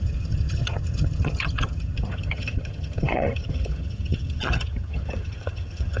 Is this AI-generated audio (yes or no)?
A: yes